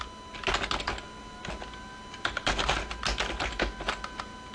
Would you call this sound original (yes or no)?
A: yes